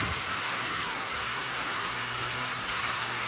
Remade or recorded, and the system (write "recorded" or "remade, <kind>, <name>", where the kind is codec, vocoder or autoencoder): remade, codec, SNAC